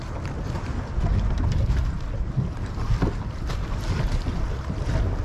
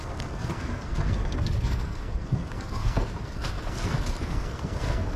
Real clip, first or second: first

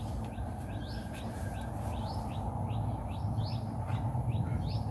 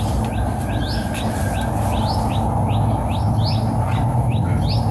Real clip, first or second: second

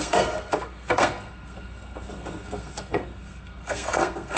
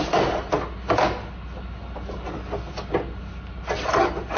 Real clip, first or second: second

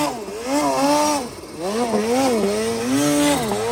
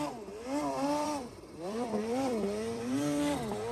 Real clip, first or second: first